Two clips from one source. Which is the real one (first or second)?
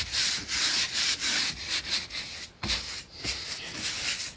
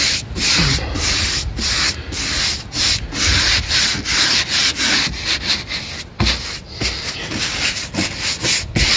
second